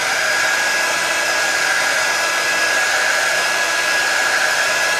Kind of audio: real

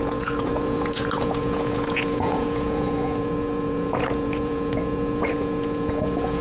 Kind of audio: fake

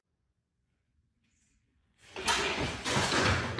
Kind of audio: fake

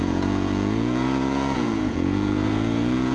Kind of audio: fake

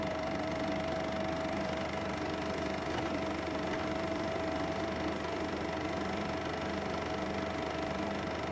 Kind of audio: fake